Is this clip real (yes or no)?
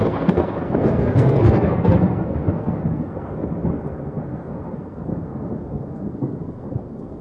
no